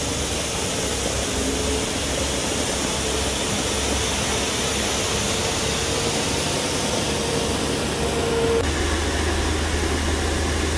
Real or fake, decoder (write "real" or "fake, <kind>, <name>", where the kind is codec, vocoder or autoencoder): real